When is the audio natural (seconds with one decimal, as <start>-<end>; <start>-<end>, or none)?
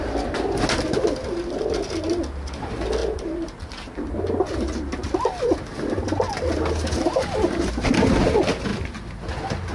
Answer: 0.0-9.7